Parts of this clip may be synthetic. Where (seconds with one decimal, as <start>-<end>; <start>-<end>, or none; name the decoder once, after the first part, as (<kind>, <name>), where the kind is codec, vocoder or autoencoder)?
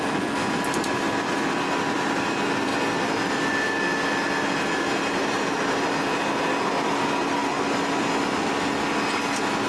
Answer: none